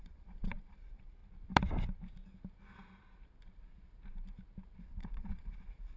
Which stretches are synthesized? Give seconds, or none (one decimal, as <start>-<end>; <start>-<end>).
0.0-1.2; 4.8-6.0